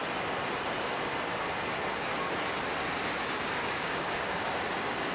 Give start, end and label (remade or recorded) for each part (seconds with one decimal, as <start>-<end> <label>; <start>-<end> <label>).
0.0-3.6 recorded; 3.6-4.4 remade; 4.4-5.1 recorded